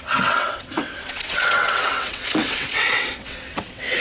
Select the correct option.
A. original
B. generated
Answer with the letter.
B